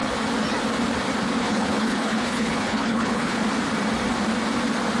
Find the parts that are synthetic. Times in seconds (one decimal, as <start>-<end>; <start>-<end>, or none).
1.4-3.4

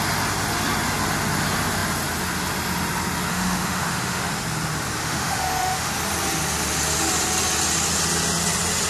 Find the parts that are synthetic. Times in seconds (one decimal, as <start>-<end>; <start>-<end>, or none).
3.3-4.2; 5.0-5.9

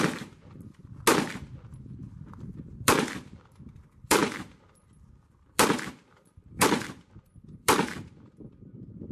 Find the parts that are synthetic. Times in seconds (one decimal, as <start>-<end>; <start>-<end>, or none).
0.0-0.8; 2.0-4.2; 5.1-9.1

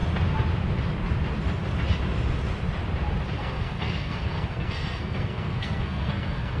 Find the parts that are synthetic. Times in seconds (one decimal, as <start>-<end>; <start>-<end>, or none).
3.4-6.6

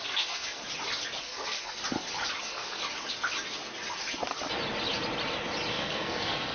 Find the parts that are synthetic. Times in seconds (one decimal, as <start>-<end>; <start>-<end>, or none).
0.0-0.6; 1.2-1.8; 2.4-2.8; 5.7-6.5